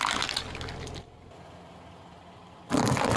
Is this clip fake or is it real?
real